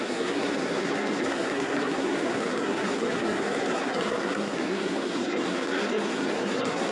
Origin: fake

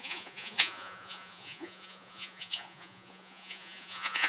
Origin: fake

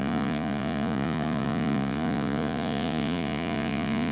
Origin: fake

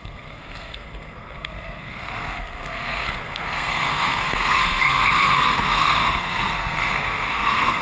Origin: fake